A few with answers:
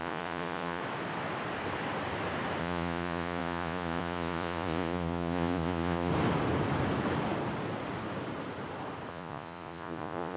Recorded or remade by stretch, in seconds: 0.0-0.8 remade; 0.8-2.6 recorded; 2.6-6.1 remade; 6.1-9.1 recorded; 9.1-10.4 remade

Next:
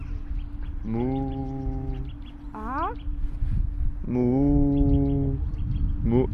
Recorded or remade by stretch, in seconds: 0.0-6.3 recorded